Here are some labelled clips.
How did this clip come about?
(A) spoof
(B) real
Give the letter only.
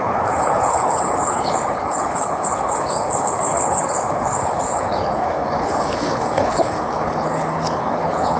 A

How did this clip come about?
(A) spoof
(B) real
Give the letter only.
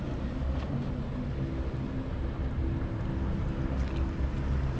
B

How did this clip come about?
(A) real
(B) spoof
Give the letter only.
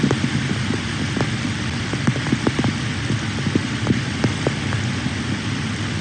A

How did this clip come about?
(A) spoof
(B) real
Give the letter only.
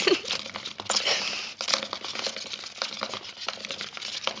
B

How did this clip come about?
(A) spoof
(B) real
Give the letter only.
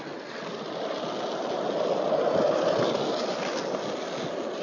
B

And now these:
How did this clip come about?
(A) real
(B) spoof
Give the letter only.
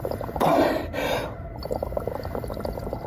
B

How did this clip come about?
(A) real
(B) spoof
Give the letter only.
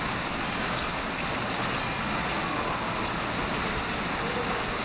A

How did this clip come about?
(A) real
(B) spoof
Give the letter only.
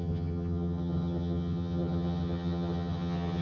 B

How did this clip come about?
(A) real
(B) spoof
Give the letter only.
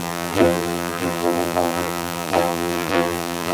B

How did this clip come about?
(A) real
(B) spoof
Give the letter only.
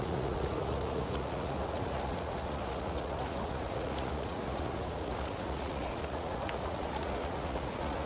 B